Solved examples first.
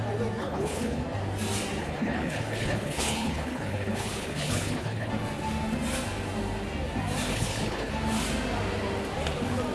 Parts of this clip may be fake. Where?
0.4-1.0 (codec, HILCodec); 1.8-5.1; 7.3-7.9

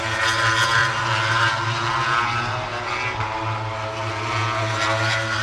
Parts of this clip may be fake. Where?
none

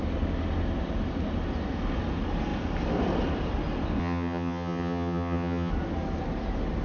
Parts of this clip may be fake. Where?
4.0-5.7 (vocoder, HiFi-GAN)

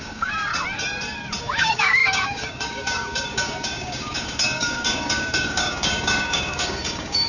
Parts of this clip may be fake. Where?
0.0-0.5 (codec, DAC); 1.4-7.3

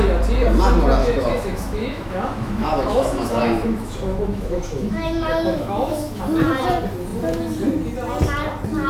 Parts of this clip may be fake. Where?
1.0-6.2 (autoencoder, DAC-VAE)

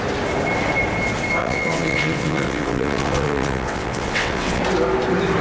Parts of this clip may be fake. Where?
1.4-4.6 (vocoder, WaveNeXt)